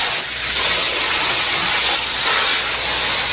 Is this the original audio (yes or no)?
yes